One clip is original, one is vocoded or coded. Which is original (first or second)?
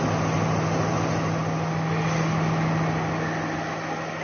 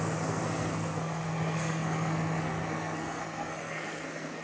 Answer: first